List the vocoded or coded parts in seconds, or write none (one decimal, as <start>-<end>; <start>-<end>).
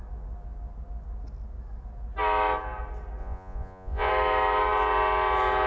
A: 3.2-4.1